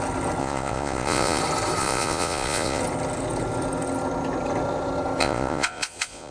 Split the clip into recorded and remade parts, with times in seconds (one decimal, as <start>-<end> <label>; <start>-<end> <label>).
0.0-0.4 recorded; 0.4-1.4 remade; 1.4-1.8 recorded; 1.8-2.8 remade; 2.8-5.2 recorded; 5.2-6.3 remade